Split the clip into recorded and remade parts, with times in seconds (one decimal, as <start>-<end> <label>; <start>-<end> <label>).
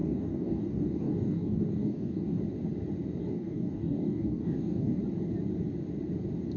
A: 0.0-2.4 remade; 2.4-3.2 recorded; 3.2-5.0 remade; 5.0-6.6 recorded